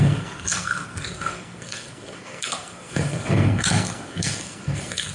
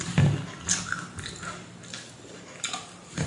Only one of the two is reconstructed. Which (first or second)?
first